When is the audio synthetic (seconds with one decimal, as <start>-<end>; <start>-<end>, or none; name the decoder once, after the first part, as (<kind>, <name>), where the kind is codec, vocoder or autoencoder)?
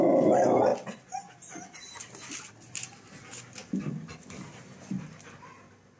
none